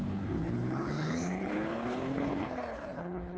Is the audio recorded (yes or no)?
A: no